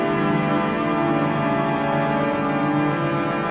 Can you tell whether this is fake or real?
real